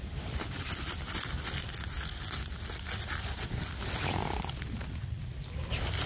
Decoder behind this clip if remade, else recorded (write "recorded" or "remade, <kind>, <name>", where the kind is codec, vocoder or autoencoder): recorded